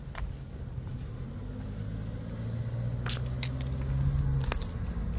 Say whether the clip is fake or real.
real